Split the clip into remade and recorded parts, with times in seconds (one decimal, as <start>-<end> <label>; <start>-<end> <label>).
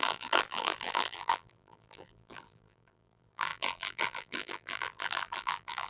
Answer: 0.0-5.9 remade